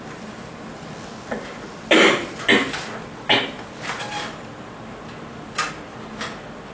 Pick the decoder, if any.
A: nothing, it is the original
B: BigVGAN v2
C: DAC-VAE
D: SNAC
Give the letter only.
A